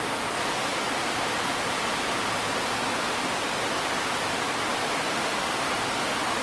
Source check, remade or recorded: recorded